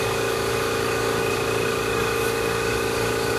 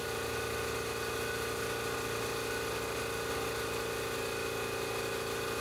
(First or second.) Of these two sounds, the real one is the second